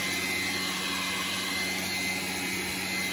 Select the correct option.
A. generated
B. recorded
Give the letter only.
B